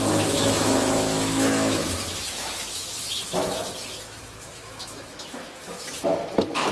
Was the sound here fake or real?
fake